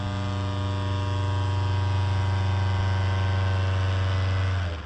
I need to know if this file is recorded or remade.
recorded